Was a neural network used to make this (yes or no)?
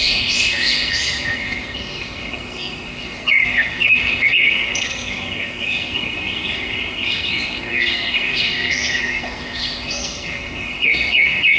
yes